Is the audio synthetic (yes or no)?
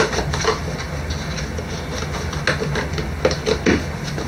no